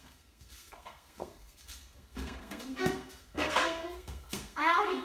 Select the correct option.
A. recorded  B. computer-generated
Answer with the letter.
B